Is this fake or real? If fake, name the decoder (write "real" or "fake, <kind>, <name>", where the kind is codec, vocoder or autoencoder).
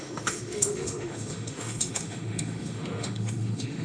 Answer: fake, autoencoder, DAC-VAE